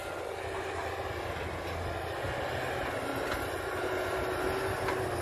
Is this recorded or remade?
recorded